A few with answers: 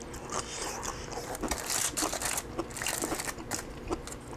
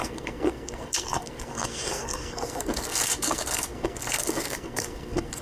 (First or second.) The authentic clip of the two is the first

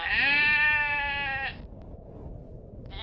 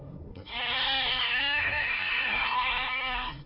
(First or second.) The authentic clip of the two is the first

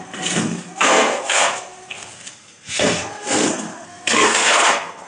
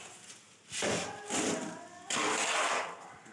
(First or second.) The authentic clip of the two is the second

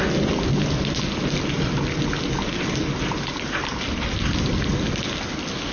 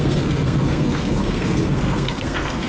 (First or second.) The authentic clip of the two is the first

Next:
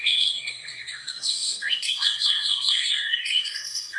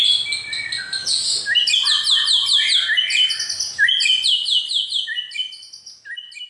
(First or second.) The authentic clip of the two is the second